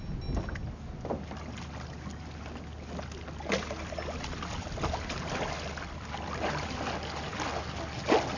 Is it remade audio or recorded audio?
recorded